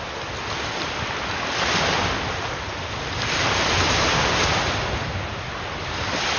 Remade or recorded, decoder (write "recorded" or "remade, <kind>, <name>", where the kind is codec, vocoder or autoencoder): recorded